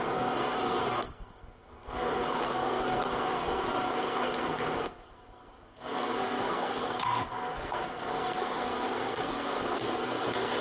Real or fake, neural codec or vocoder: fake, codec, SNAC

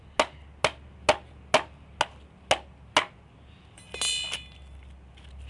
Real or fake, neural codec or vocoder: real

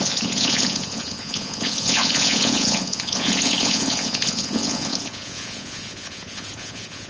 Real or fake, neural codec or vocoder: fake, vocoder, Vocos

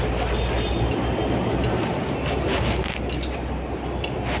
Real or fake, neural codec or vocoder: real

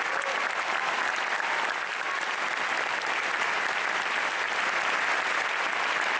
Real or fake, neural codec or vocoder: real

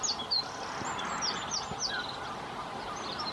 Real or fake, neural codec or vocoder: real